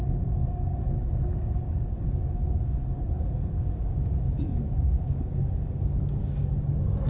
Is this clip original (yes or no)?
no